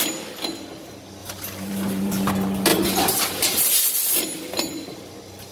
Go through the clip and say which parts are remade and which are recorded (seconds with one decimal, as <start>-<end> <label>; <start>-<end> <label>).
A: 0.0-1.2 recorded; 1.2-2.3 remade; 2.3-5.5 recorded